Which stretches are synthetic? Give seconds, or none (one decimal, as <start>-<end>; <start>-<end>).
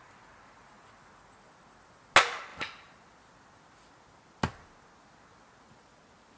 none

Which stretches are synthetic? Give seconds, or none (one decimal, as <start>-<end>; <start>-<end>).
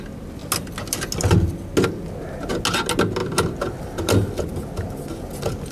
none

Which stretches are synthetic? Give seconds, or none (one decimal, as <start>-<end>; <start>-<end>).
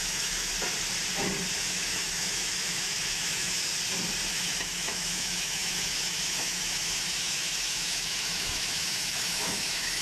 0.0-0.5; 1.6-3.7; 4.3-10.0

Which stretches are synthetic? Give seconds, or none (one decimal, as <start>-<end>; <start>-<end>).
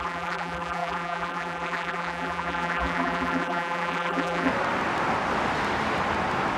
0.0-4.5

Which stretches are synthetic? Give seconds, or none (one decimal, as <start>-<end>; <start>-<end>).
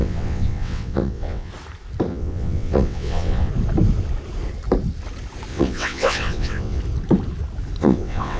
0.0-1.5; 2.1-3.5; 5.5-6.8; 7.8-8.4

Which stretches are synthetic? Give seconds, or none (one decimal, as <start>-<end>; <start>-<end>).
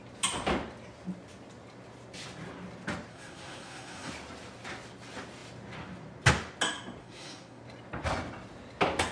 3.1-4.1; 7.0-7.6